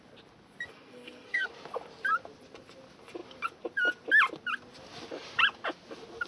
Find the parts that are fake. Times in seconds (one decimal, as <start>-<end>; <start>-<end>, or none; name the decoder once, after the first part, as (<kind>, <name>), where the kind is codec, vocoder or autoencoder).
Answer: 0.7-1.5 (codec, SNAC)